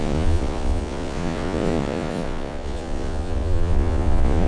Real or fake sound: fake